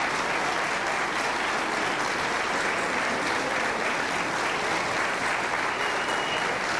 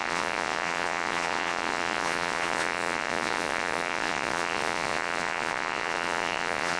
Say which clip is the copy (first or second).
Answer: second